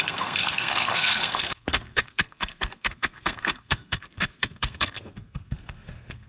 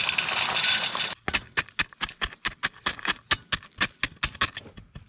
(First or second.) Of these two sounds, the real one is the second